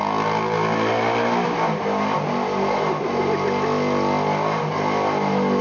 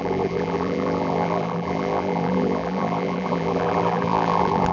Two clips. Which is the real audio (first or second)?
first